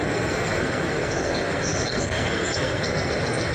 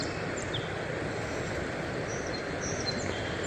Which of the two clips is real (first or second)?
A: second